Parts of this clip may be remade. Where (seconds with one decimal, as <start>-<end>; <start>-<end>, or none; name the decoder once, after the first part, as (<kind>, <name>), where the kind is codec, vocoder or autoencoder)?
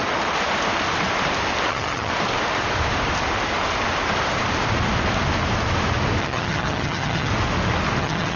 1.7-2.1 (vocoder, HiFi-GAN); 6.2-7.3; 8.0-8.4